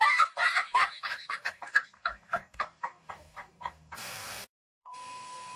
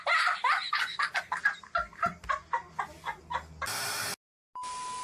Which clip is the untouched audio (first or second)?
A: second